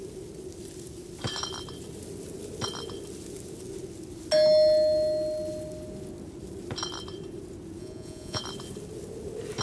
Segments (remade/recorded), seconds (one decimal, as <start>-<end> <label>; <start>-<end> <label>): 0.0-7.8 recorded; 7.8-8.4 remade; 8.4-9.6 recorded